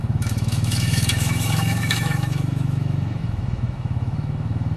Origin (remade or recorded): remade